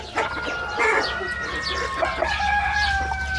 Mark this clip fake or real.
real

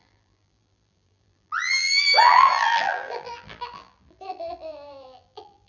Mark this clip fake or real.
fake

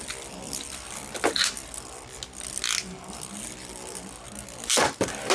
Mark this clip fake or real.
real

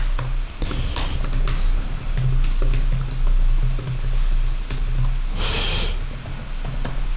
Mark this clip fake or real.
real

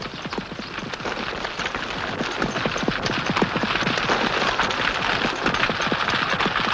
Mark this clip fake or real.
real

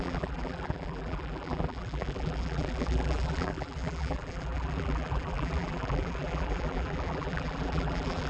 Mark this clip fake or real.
fake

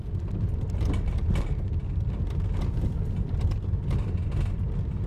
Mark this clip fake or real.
real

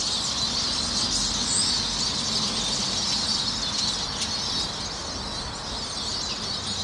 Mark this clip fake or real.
real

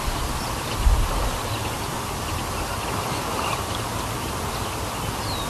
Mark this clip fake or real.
real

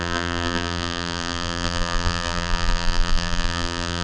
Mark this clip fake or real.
fake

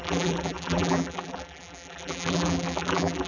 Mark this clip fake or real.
fake